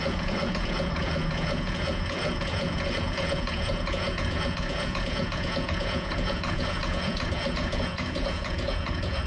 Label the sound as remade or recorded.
remade